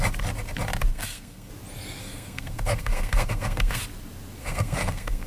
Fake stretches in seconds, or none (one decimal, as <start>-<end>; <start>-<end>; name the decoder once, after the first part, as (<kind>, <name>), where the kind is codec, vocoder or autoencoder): 0.9-1.5 (codec, SNAC); 2.0-3.8; 4.4-5.3